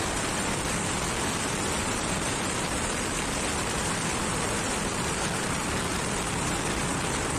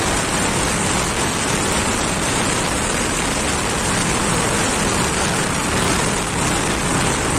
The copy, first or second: first